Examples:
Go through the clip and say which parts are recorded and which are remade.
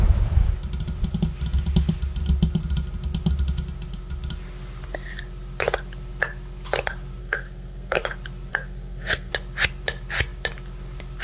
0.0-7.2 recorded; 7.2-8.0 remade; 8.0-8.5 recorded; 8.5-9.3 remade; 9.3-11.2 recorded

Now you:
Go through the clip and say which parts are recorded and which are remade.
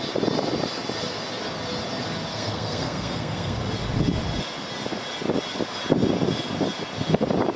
0.0-2.3 recorded; 2.3-3.6 remade; 3.6-7.6 recorded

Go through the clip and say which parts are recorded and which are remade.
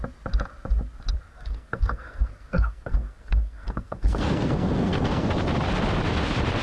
0.0-1.3 recorded; 1.3-5.3 remade; 5.3-6.6 recorded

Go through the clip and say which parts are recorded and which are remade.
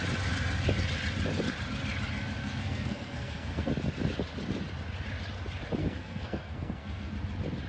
0.0-2.4 recorded; 2.4-3.7 remade; 3.7-5.8 recorded; 5.8-7.1 remade; 7.1-7.7 recorded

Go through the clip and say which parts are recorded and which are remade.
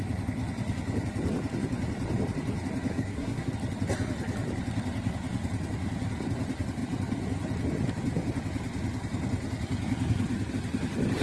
0.0-2.9 recorded; 2.9-3.5 remade; 3.5-11.2 recorded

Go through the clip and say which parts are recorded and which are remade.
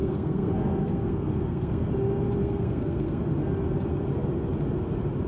0.0-1.9 remade; 1.9-2.4 recorded; 2.4-3.2 remade; 3.2-5.3 recorded